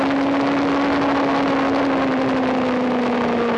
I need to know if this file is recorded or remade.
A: recorded